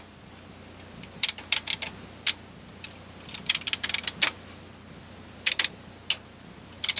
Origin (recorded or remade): recorded